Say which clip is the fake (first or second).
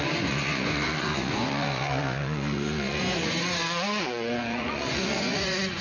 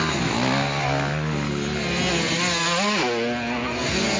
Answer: first